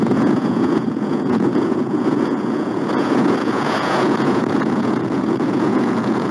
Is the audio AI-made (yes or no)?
yes